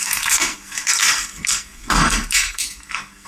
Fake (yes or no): yes